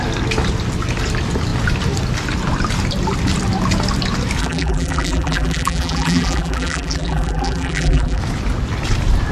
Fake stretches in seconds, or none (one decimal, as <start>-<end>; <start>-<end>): 4.4-8.2